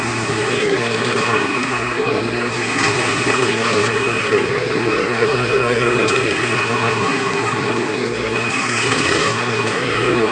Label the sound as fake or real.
fake